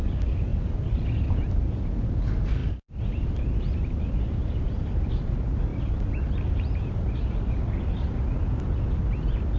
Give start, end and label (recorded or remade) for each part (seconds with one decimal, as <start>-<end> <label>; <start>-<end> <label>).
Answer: 0.0-9.6 recorded